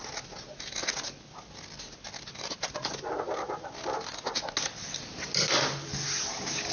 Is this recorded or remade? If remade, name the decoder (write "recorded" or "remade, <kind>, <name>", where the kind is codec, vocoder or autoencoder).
recorded